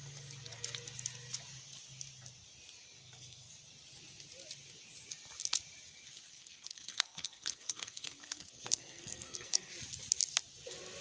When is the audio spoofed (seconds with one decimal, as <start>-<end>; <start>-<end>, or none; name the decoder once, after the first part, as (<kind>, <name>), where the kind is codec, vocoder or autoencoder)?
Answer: 3.0-3.5 (codec, SNAC); 6.3-9.7